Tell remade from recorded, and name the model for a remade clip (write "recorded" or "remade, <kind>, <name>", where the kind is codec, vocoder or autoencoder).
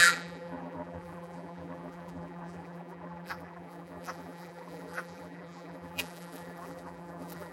remade, vocoder, BigVGAN v2